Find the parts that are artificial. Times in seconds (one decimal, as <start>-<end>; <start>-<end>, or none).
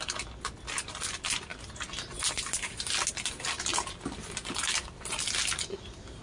none